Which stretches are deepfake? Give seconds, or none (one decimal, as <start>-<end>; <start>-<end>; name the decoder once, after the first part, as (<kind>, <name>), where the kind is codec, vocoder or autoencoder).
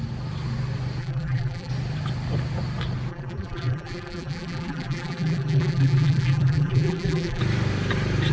1.0-1.7 (vocoder, BigVGAN v2); 3.1-7.4